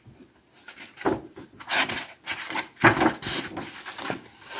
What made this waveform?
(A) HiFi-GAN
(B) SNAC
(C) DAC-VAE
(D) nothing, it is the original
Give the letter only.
D